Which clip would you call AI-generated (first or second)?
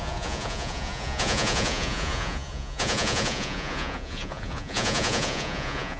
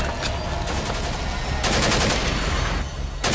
first